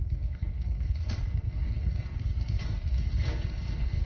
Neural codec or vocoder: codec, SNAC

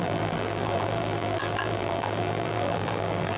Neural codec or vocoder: vocoder, BigVGAN v2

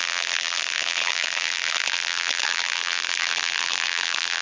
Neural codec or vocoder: vocoder, BigVGAN v2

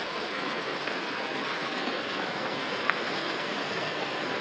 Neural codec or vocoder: codec, SNAC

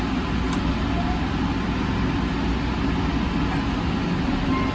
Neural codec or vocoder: none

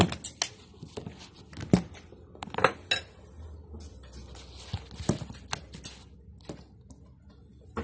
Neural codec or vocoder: none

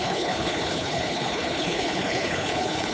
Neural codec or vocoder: codec, HILCodec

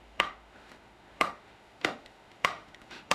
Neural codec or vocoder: autoencoder, DAC-VAE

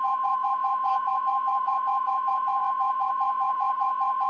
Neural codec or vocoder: vocoder, WaveNeXt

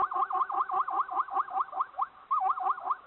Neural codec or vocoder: none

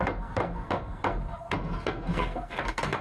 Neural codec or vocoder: codec, SNAC